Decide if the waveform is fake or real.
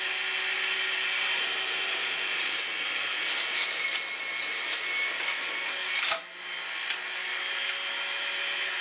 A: real